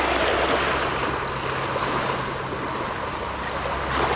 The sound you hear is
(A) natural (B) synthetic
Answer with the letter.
A